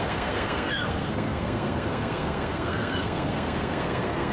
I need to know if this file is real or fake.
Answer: fake